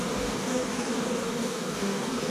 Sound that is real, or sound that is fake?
fake